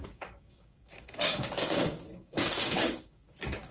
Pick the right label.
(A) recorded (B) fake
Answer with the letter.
B